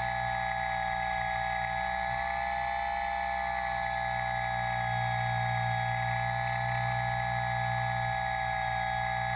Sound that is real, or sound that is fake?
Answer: real